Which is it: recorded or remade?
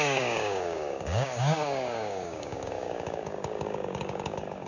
remade